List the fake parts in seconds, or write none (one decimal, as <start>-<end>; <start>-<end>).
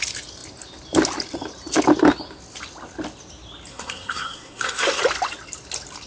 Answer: 3.7-5.0